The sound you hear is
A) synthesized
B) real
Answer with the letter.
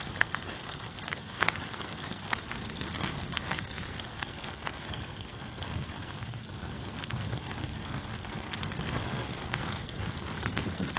A